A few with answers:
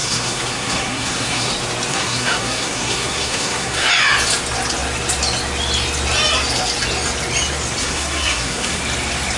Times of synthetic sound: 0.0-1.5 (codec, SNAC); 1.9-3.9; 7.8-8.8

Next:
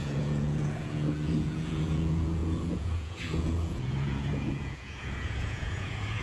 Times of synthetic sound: 0.0-6.2 (vocoder, Vocos)